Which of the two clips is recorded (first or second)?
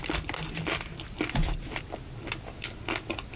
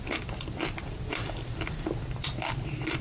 first